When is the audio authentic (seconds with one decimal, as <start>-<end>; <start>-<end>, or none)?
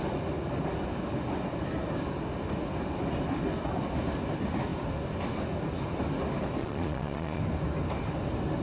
0.0-6.6; 7.4-8.6